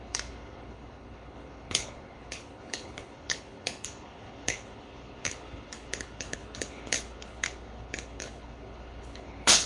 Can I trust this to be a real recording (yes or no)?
no